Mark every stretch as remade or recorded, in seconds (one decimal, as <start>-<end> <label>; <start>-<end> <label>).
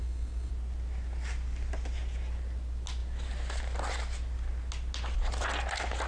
0.0-0.5 remade; 0.5-6.1 recorded